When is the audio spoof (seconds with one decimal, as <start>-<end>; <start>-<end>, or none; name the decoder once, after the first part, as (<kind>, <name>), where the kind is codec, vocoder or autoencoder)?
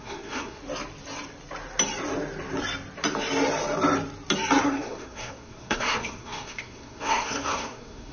0.0-0.6 (codec, SNAC); 4.6-8.1